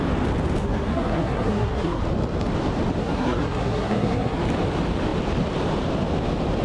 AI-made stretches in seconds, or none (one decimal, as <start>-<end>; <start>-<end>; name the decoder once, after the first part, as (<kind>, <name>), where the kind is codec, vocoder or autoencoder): 0.6-2.0 (codec, SNAC); 3.0-4.4